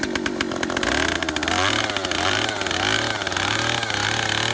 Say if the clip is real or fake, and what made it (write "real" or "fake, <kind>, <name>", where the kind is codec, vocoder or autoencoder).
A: real